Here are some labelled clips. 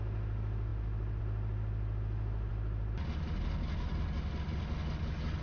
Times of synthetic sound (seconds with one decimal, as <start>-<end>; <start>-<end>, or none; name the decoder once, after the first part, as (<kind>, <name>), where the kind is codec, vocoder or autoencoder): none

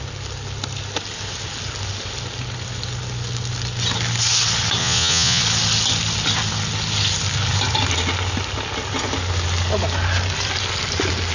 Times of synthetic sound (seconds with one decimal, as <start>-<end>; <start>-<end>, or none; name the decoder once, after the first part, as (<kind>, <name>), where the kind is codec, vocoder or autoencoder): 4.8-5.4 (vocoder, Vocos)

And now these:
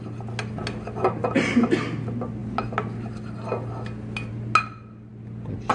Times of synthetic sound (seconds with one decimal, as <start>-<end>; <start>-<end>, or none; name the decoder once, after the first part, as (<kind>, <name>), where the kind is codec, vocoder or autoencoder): none

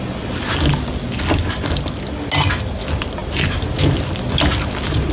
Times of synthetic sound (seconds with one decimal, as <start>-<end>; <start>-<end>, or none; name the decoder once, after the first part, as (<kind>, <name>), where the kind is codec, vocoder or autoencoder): none

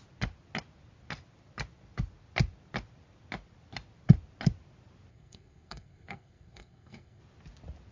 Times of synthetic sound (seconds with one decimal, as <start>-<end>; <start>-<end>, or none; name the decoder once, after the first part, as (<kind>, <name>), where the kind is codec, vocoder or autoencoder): 5.1-7.2 (codec, SNAC)

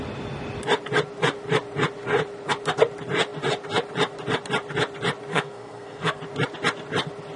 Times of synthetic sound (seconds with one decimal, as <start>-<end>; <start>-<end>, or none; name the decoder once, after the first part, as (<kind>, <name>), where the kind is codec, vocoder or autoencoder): 5.3-6.2 (codec, SNAC)

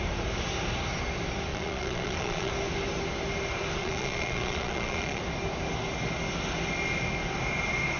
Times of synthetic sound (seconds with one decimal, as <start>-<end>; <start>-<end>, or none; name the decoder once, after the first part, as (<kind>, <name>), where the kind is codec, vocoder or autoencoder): 1.5-2.5 (vocoder, Vocos); 3.8-5.2